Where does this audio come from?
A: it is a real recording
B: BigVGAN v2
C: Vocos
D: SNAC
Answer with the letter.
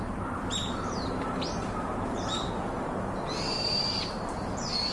B